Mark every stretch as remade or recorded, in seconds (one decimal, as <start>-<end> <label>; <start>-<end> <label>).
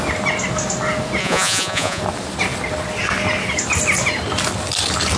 0.0-1.2 recorded; 1.2-2.0 remade; 2.0-5.2 recorded